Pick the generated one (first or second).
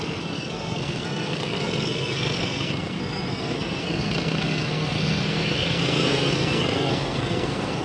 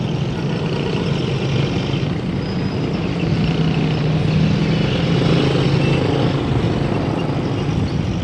first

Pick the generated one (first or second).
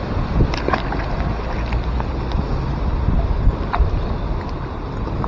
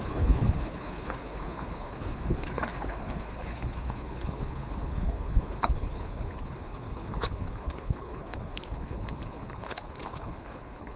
second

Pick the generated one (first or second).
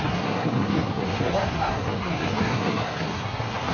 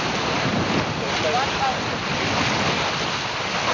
first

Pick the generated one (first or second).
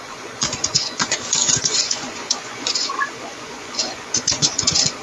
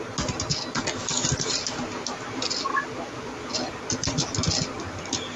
first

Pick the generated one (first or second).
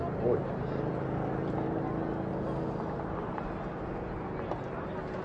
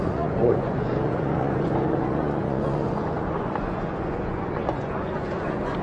second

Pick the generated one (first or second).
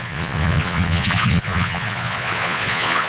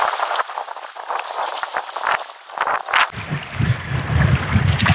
first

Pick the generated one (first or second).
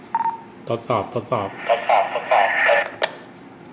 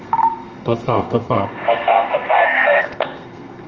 second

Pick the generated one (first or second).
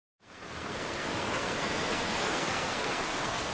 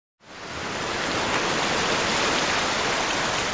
first